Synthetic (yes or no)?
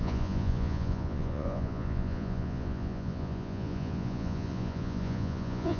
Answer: yes